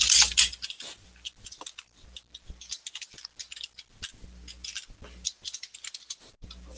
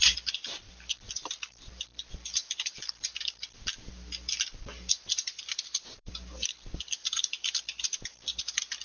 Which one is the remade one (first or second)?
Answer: second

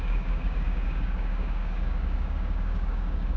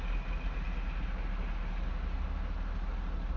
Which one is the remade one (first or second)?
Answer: first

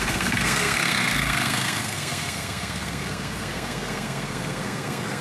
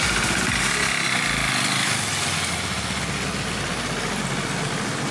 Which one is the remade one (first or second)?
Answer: first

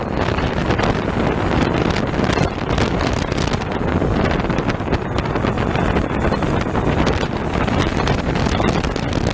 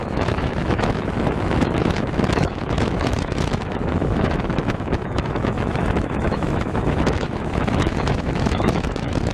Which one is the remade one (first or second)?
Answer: second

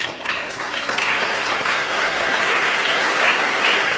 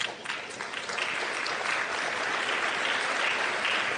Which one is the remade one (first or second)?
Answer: first